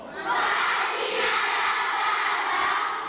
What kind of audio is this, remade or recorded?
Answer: recorded